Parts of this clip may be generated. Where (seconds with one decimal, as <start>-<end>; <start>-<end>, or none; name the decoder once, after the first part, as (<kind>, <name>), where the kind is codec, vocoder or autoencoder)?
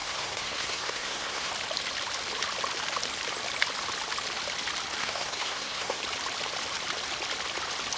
0.0-1.5 (codec, SNAC); 5.0-6.0